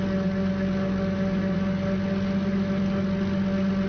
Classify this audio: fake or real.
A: real